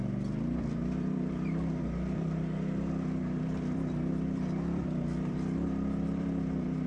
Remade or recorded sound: remade